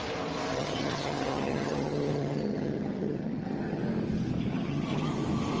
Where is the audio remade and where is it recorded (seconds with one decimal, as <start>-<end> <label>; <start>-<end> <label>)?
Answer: 0.0-0.5 recorded; 0.5-3.8 remade; 3.8-4.5 recorded; 4.5-5.1 remade; 5.1-5.6 recorded